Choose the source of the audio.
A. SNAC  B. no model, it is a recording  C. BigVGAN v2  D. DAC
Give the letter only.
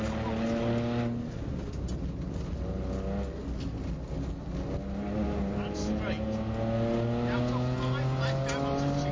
B